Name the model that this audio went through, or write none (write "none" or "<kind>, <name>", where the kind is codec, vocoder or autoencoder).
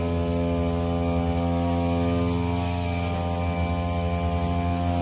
none